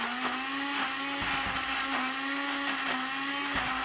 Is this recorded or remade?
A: recorded